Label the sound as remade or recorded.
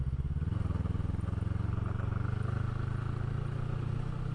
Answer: recorded